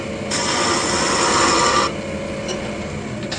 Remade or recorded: recorded